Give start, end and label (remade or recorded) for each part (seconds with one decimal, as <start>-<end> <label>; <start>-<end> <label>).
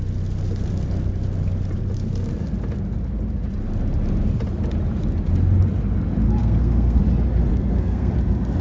0.0-6.4 recorded; 6.4-7.0 remade; 7.0-7.5 recorded; 7.5-8.1 remade; 8.1-8.6 recorded